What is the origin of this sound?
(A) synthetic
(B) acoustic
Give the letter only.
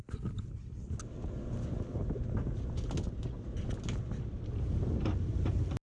B